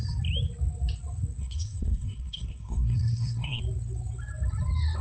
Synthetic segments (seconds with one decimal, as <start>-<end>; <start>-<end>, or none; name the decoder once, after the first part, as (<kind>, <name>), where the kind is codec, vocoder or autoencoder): 1.4-3.6 (codec, SNAC)